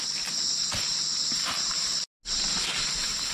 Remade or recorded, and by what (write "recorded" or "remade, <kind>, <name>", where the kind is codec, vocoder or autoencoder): recorded